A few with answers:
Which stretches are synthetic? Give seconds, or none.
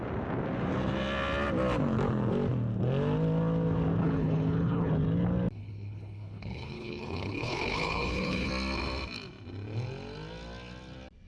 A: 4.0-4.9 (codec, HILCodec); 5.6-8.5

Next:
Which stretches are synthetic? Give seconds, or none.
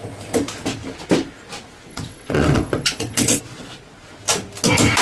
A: 1.9-3.4 (vocoder, WaveNeXt)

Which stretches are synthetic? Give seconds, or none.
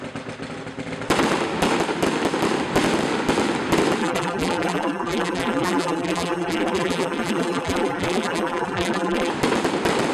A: 4.0-9.3 (vocoder, BigVGAN v2)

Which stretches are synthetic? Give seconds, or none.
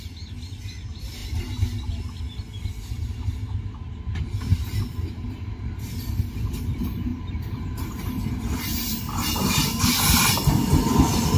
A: none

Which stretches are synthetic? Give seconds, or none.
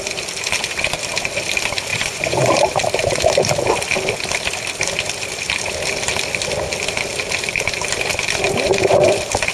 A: 1.9-2.5 (vocoder, Vocos)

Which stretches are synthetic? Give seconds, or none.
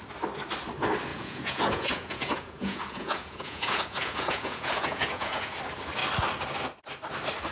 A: 1.1-5.6 (vocoder, Vocos)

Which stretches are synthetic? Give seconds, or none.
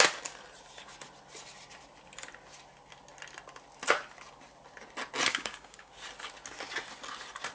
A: 5.3-5.9 (codec, DAC)